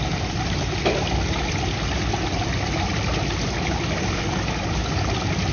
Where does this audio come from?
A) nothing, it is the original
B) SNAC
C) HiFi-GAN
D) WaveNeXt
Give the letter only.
A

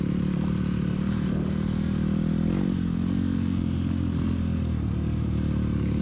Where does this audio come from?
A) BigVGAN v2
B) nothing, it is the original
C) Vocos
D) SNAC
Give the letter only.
B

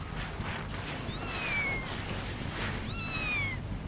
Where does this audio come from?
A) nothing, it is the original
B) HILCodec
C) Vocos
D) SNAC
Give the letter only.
A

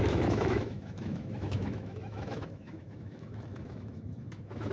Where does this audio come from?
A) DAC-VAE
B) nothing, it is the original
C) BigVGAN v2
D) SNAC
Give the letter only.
A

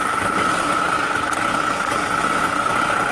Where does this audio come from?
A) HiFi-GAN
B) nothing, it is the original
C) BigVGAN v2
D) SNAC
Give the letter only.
B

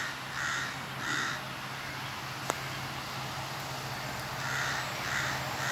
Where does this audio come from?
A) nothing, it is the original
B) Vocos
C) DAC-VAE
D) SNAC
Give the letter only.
A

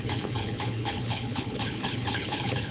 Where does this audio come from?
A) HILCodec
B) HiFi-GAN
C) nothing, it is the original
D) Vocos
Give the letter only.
A